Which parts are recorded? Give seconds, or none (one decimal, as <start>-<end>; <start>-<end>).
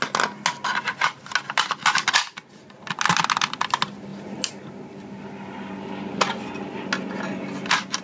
0.0-8.0